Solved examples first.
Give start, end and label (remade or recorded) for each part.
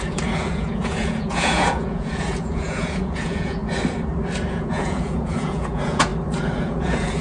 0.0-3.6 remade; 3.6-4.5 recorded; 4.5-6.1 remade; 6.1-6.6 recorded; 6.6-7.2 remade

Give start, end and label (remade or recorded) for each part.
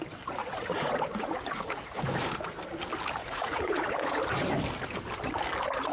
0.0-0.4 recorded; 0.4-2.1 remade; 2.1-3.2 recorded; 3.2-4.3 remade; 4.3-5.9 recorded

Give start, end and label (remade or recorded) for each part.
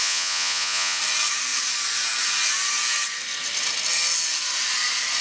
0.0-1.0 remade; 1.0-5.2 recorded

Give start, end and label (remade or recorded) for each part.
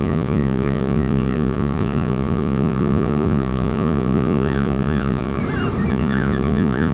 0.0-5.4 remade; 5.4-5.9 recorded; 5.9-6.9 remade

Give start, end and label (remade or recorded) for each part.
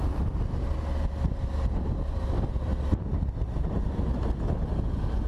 0.0-5.3 recorded